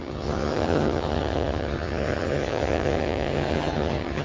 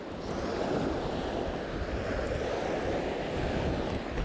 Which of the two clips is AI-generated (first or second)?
first